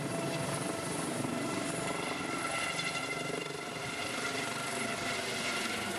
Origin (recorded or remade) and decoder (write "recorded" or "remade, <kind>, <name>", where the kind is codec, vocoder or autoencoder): recorded